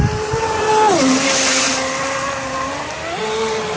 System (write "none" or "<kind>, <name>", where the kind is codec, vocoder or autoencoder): none